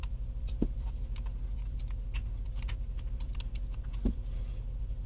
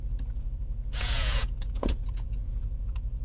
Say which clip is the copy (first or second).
second